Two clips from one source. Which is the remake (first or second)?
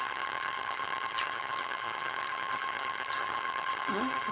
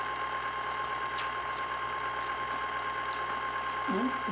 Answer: first